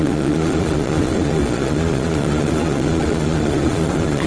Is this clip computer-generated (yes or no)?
yes